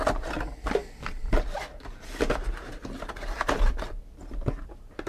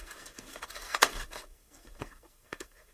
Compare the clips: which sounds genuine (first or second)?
first